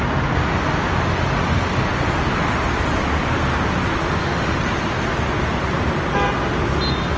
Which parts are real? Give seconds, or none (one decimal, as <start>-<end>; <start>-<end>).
0.0-4.0; 4.6-7.2